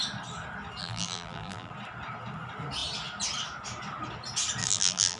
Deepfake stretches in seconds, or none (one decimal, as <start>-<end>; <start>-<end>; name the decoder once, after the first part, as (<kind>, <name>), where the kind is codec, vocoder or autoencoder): 0.8-1.7 (vocoder, BigVGAN v2); 4.6-5.2